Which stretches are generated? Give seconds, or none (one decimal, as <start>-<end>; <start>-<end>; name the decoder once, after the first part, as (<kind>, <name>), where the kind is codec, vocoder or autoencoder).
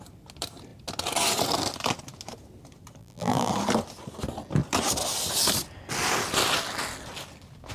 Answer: 3.0-3.5 (vocoder, BigVGAN v2)